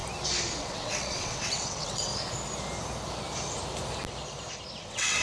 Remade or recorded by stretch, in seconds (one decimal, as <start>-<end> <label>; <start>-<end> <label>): 0.0-0.6 recorded; 0.6-2.1 remade; 2.1-4.8 recorded; 4.8-5.2 remade